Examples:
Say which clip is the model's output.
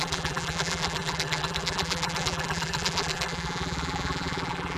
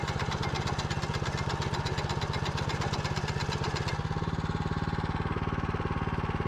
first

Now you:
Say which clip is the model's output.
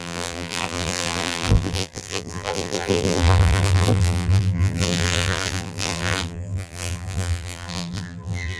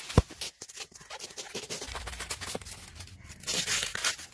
first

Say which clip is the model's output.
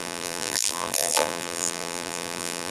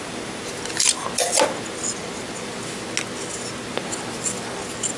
first